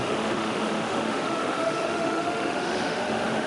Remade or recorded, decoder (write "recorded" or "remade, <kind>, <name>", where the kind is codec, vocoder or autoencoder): remade, autoencoder, DAC-VAE